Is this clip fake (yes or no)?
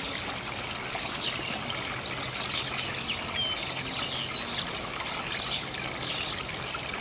no